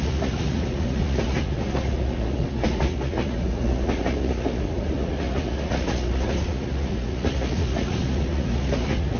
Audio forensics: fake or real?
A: fake